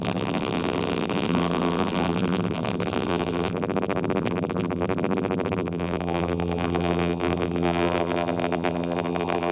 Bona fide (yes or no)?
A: no